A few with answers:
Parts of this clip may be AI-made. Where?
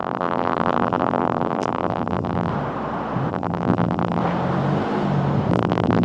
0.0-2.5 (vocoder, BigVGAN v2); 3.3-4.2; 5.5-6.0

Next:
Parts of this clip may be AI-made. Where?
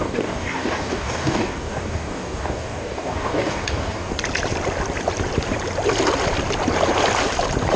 0.0-4.1 (codec, DAC)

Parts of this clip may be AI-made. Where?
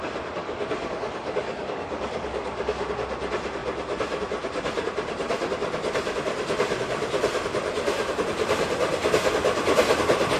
0.4-2.9 (codec, DAC)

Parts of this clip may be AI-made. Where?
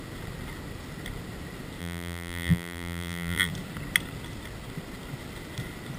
1.8-3.5 (vocoder, BigVGAN v2)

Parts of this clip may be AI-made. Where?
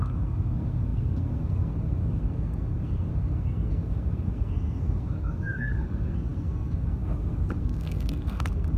0.0-8.8 (codec, SNAC)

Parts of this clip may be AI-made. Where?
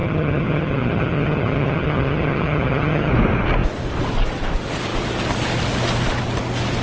0.0-3.1 (vocoder, HiFi-GAN)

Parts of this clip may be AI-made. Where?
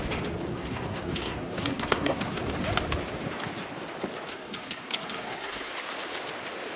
0.5-2.4 (codec, SNAC); 4.3-5.7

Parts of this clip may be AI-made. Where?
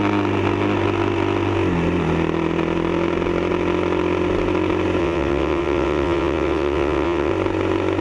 5.0-7.3 (vocoder, WaveNeXt)